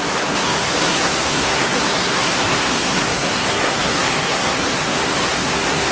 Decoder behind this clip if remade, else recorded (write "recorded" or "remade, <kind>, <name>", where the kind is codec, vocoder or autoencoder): remade, codec, SNAC